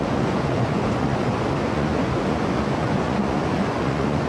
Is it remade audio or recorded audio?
remade